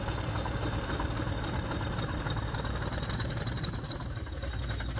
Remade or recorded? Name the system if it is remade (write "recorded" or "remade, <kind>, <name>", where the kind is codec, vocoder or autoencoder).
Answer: recorded